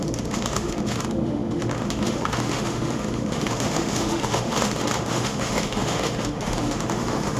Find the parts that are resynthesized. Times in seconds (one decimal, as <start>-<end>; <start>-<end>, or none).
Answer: 0.0-7.4